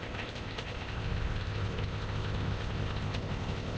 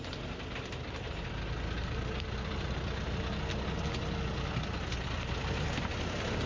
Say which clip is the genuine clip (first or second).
second